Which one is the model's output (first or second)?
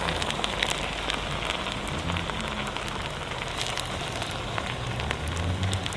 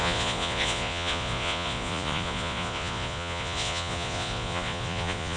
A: second